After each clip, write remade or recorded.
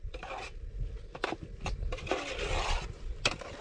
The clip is recorded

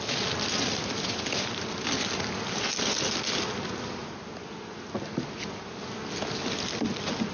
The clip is recorded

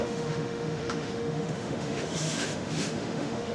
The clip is remade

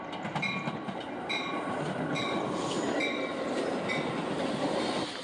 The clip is recorded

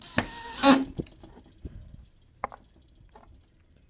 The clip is recorded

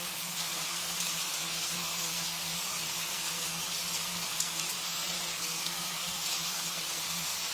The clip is remade